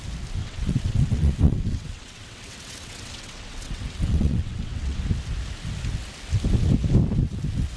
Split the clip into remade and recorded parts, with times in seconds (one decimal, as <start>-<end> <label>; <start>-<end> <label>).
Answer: 0.0-0.4 recorded; 0.4-5.0 remade; 5.0-7.8 recorded

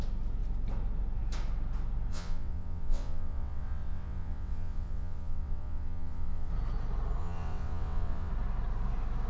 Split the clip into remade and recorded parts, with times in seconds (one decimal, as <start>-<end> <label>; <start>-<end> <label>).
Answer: 0.0-2.1 recorded; 2.1-6.5 remade; 6.5-7.2 recorded; 7.2-8.3 remade; 8.3-9.3 recorded